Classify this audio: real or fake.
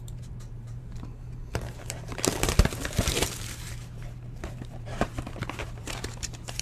fake